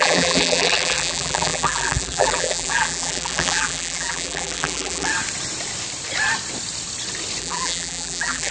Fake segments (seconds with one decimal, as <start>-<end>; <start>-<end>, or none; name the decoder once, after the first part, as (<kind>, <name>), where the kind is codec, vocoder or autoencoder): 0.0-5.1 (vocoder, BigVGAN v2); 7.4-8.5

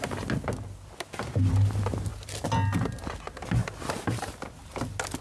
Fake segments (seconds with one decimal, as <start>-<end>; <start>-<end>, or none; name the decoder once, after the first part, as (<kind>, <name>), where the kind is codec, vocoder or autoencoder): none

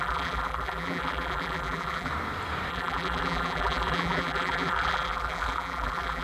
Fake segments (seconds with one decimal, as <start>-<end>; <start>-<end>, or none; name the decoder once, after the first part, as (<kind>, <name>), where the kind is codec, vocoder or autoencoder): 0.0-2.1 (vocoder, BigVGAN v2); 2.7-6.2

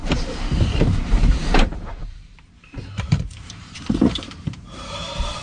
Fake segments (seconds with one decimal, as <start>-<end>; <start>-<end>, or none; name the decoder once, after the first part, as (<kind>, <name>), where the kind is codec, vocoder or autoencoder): 0.0-5.4 (vocoder, BigVGAN v2)

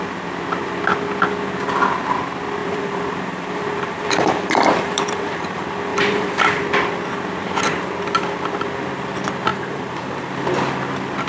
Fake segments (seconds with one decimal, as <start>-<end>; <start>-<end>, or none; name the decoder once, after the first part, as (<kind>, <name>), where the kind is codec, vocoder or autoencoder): 2.6-5.4 (vocoder, BigVGAN v2); 5.9-6.6; 9.5-10.3